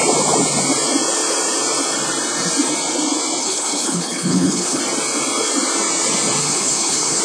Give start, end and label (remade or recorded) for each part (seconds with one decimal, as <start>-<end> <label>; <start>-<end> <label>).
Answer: 0.0-3.4 recorded; 3.4-4.8 remade; 4.8-6.4 recorded; 6.4-7.2 remade